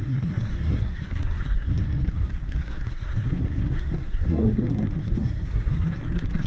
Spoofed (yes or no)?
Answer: yes